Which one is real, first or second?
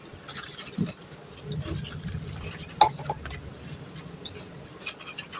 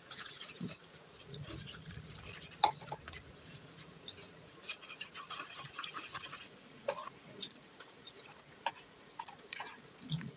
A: first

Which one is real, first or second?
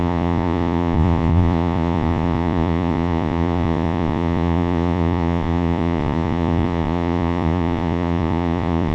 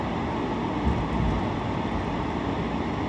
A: second